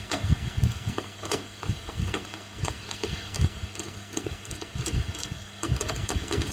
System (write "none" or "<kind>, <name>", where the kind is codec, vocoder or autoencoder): codec, SNAC